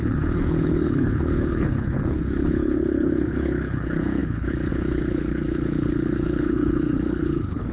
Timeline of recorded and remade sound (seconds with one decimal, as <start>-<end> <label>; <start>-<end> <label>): 0.0-7.7 remade